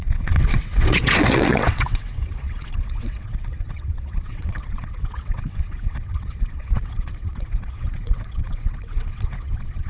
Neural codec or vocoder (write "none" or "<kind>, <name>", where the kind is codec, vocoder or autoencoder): vocoder, WaveNeXt